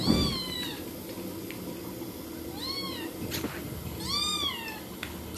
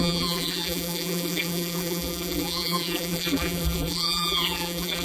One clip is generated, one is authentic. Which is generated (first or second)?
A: second